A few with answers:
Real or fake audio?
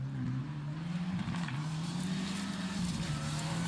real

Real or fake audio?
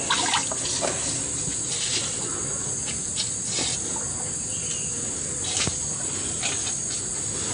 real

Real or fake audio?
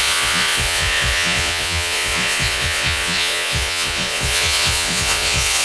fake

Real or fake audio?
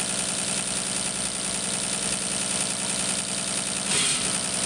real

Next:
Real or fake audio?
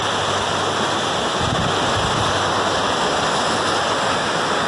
real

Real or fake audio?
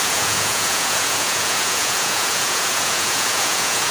fake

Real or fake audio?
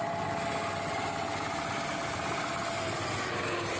real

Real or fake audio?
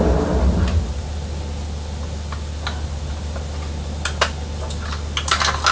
real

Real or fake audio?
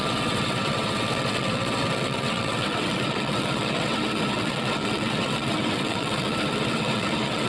fake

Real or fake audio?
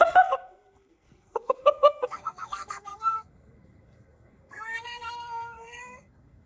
fake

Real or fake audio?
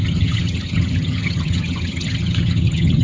fake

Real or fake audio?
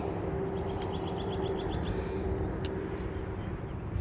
real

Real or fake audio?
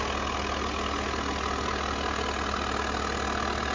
real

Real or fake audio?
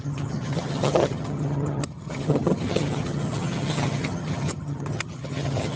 fake